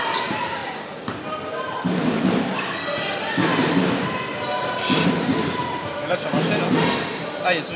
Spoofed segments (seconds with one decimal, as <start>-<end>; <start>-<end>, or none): none

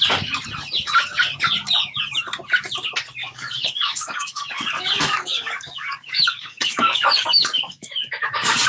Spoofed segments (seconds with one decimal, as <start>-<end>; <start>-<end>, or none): 3.2-8.7

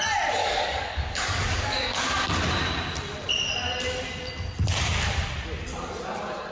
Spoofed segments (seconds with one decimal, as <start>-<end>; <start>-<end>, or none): 0.4-2.1

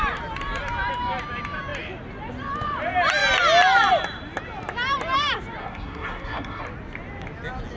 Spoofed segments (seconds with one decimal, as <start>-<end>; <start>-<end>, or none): 5.6-6.6

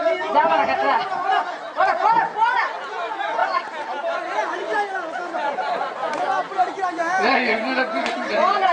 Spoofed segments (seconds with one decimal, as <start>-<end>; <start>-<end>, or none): none

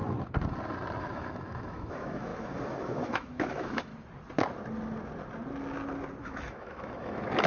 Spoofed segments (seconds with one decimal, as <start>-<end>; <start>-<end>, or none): 1.0-3.9; 6.2-7.5

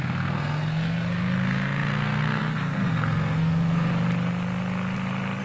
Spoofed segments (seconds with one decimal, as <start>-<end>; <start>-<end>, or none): 0.0-3.9

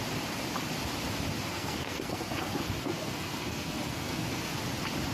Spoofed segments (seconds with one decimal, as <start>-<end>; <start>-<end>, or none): 1.5-4.6